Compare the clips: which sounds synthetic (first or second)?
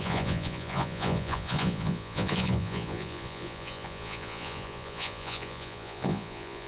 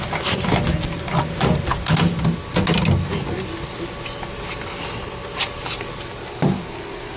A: first